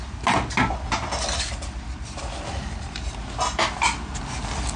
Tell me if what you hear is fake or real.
real